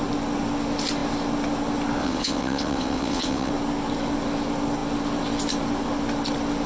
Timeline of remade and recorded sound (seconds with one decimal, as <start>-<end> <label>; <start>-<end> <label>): 0.0-2.0 recorded; 2.0-3.5 remade; 3.5-6.7 recorded